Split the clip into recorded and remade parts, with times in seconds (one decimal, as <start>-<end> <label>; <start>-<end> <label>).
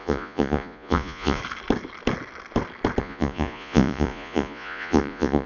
0.0-1.4 remade; 1.4-3.0 recorded; 3.0-5.5 remade